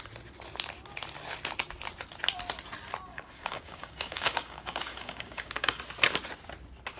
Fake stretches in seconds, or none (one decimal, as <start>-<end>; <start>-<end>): 3.1-5.8